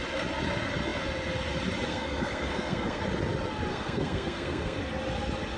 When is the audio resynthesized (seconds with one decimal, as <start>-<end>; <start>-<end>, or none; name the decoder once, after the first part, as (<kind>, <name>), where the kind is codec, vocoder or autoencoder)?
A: 1.9-3.0 (codec, SNAC); 3.7-4.8